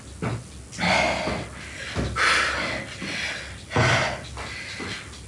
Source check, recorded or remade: recorded